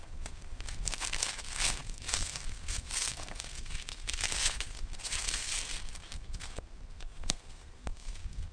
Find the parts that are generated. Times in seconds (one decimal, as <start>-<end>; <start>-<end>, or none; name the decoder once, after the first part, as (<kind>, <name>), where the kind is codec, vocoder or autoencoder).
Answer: 0.0-8.5 (codec, SNAC)